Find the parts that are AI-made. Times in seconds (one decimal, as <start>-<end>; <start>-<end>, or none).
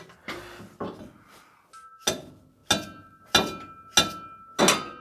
none